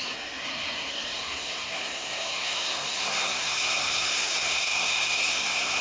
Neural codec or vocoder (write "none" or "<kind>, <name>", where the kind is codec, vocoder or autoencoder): codec, SNAC